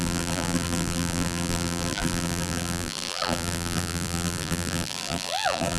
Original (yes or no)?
no